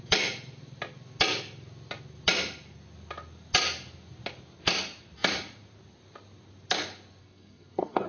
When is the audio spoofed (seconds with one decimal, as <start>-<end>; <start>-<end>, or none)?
7.2-8.1